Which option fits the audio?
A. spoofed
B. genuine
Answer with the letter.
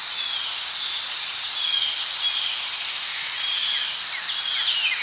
B